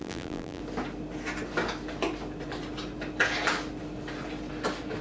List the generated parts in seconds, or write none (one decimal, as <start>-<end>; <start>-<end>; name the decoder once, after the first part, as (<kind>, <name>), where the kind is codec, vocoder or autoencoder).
0.0-0.6 (vocoder, BigVGAN v2)